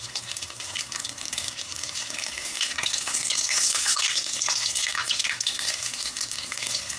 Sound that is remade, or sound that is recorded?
remade